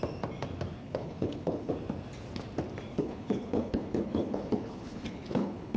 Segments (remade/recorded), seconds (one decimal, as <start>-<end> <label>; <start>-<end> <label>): 0.0-0.8 recorded; 0.8-1.7 remade; 1.7-2.9 recorded; 2.9-5.8 remade